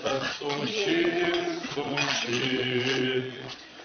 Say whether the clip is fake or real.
fake